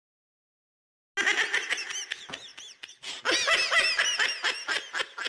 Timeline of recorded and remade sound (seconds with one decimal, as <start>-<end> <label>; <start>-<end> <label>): 0.0-5.3 recorded